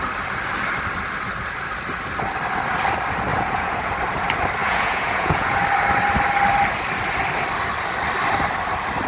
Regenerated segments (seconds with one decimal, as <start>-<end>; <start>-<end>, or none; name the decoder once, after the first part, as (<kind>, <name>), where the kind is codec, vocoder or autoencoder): 3.3-3.9 (vocoder, Vocos); 4.6-5.6